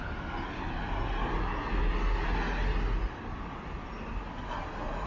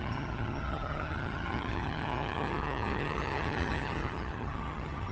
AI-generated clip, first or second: second